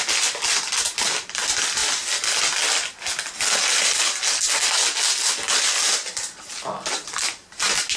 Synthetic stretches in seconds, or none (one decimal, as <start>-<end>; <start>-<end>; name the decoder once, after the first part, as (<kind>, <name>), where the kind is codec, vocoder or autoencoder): none